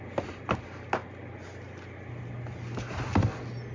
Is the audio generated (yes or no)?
no